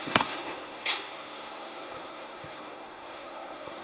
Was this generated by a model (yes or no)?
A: yes